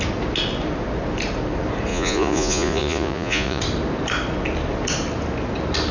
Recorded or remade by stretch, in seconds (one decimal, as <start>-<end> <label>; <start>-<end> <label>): 0.0-1.9 recorded; 1.9-3.6 remade; 3.6-5.9 recorded